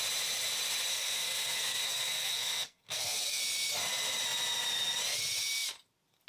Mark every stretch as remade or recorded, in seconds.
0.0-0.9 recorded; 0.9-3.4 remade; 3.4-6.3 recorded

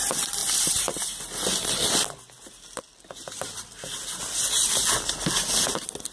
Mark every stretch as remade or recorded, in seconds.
0.0-6.1 recorded

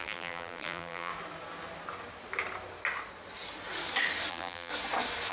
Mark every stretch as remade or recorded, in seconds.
0.0-1.1 remade; 1.1-4.3 recorded; 4.3-4.7 remade; 4.7-5.3 recorded

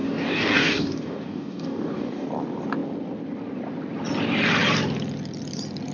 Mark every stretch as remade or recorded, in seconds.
0.0-2.3 remade; 2.3-5.9 recorded